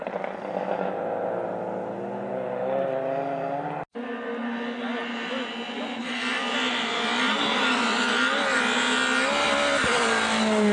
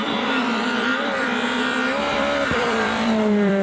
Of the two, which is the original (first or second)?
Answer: first